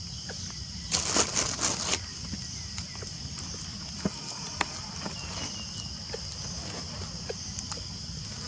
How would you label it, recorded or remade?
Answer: recorded